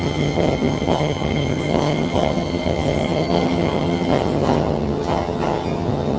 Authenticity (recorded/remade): remade